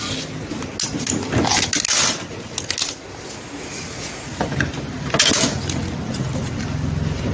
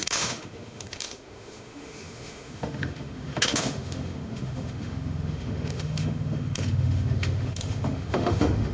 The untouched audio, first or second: first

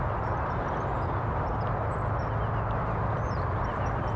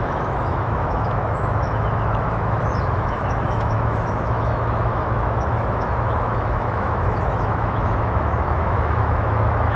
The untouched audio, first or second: first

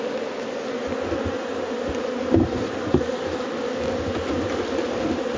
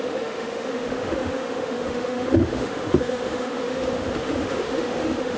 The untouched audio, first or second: first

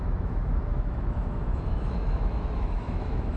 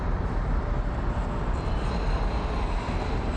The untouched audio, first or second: second